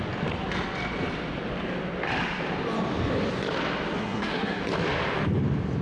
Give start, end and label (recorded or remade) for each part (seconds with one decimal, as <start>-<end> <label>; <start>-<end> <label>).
0.0-4.0 recorded; 4.0-4.6 remade; 4.6-5.8 recorded

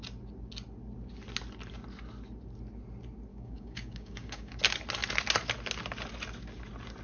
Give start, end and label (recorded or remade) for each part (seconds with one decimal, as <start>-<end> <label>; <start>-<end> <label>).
0.0-3.3 recorded; 3.3-4.6 remade; 4.6-7.0 recorded